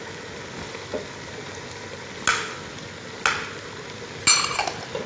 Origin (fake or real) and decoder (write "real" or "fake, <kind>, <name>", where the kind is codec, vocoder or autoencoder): real